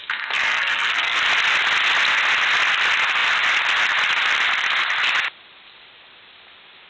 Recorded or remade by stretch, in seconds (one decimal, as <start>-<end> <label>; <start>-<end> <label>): 0.0-1.2 remade; 1.2-6.9 recorded